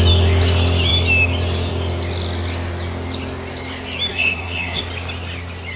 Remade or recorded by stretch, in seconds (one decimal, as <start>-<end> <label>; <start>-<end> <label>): 0.0-4.1 recorded; 4.1-4.8 remade; 4.8-5.8 recorded